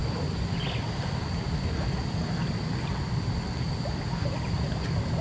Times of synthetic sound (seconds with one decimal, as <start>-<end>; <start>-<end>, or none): none